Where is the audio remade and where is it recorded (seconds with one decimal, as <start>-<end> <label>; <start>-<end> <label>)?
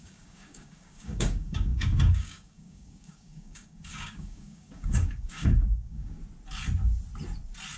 0.0-6.2 remade; 6.2-7.8 recorded